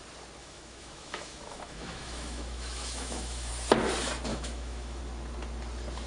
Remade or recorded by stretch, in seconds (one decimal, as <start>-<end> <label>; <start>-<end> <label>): 0.0-0.4 recorded; 0.4-3.5 remade; 3.5-4.3 recorded; 4.3-5.0 remade; 5.0-6.1 recorded

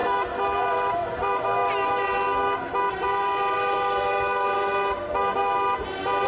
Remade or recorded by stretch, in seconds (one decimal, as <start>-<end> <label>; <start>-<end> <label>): 0.0-6.3 recorded

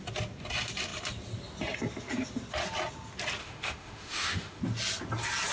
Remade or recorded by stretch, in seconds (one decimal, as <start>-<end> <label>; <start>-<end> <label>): 0.0-3.4 recorded; 3.4-4.6 remade; 4.6-5.5 recorded

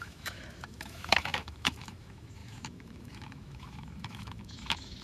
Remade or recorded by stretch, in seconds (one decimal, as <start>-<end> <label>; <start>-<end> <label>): 0.0-5.0 remade